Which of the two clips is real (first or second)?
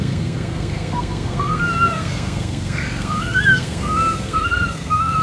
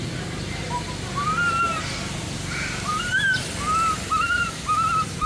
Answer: second